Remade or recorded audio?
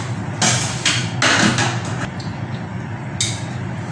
recorded